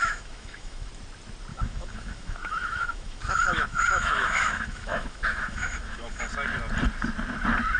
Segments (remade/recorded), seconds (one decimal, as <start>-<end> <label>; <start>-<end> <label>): 0.0-0.9 remade; 0.9-1.5 recorded; 1.5-6.2 remade; 6.2-7.8 recorded